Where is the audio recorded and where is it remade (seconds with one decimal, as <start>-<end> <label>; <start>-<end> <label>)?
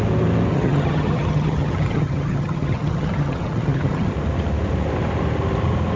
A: 0.0-0.5 recorded; 0.5-4.1 remade; 4.1-6.0 recorded